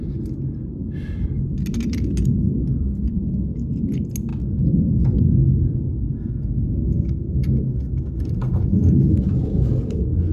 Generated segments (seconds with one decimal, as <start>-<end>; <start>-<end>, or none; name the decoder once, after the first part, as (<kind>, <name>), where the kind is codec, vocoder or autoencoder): 6.0-9.1 (codec, SNAC)

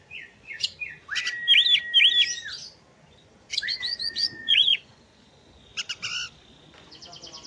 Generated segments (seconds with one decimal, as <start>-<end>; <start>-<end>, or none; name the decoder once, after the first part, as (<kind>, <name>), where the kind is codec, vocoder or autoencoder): 0.0-0.7 (vocoder, Vocos); 3.1-5.7; 6.5-7.5

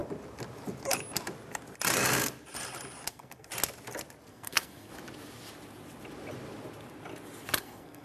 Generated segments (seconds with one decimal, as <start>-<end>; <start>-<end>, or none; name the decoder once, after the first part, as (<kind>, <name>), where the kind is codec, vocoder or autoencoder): 3.1-3.5 (codec, SNAC); 4.3-4.9; 7.6-8.0

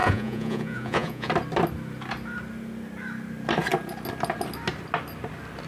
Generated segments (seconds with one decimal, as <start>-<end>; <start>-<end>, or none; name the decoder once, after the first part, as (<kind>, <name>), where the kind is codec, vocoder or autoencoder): 0.0-1.3 (vocoder, Vocos)